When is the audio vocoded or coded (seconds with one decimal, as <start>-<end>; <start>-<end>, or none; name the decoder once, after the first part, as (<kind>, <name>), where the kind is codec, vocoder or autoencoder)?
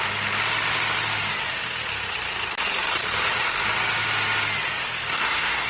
5.1-5.7 (codec, SNAC)